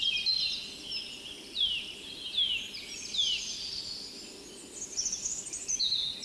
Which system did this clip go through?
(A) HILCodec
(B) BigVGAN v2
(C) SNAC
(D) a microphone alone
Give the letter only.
D